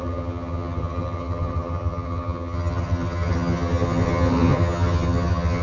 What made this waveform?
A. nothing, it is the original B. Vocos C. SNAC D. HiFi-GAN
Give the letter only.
D